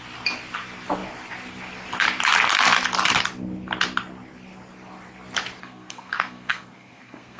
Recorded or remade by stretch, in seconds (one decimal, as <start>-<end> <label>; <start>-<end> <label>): 0.0-5.6 recorded; 5.6-7.4 remade